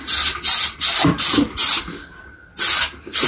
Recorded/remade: recorded